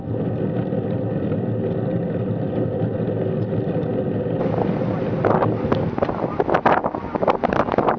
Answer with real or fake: real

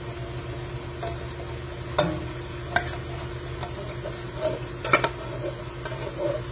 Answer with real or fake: real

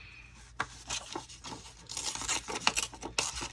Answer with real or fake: real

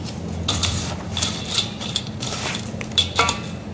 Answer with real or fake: fake